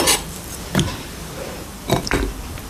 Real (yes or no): no